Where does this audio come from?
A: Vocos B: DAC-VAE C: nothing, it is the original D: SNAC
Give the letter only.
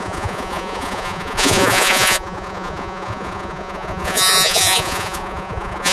A